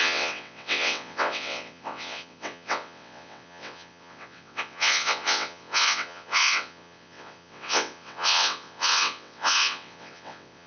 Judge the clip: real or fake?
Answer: fake